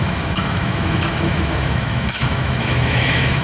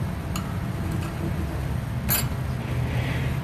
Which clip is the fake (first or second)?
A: first